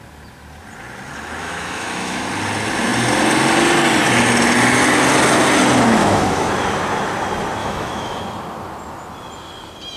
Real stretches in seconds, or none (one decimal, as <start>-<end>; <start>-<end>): 0.0-1.4; 2.2-6.0; 6.5-7.6; 8.2-10.0